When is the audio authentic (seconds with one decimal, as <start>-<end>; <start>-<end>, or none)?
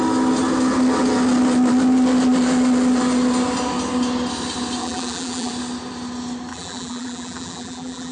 0.0-4.8; 5.5-6.5